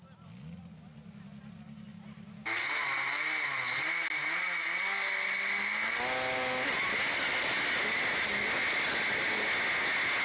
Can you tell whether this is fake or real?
real